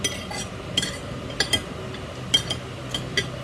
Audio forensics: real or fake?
real